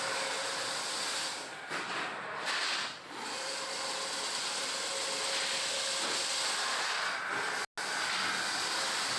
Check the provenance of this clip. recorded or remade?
recorded